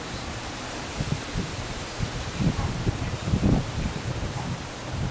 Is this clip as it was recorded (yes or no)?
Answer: no